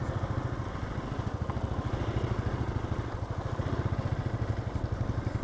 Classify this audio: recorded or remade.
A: recorded